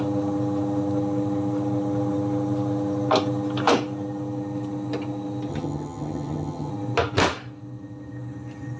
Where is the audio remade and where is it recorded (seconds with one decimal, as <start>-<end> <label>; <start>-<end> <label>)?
0.0-5.5 recorded; 5.5-6.7 remade; 6.7-8.8 recorded